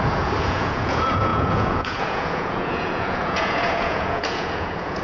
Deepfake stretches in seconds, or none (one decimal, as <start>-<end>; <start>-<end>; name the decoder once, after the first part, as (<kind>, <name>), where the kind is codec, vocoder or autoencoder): 0.0-5.0 (vocoder, Vocos)